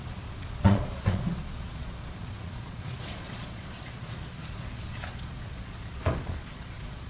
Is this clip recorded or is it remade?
remade